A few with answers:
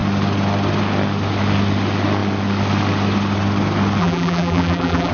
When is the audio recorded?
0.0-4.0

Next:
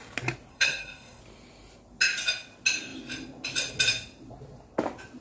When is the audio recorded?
0.0-0.5; 1.2-5.2

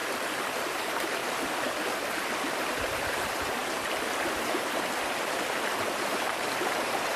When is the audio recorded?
0.0-0.7; 1.2-2.5; 3.6-5.9

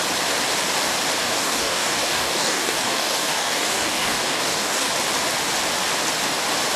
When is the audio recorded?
0.0-1.2; 4.9-6.8

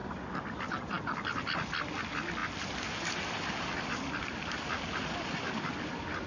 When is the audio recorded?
0.0-2.4; 4.2-6.3